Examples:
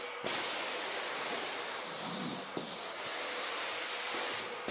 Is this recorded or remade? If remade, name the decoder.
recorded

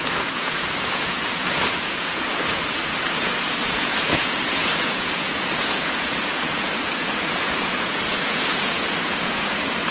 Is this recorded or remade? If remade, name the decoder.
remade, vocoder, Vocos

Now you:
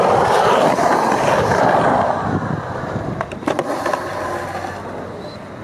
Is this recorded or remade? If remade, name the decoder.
recorded